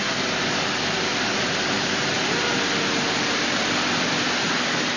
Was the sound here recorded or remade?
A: recorded